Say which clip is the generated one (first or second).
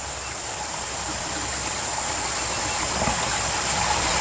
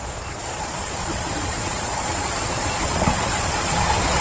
second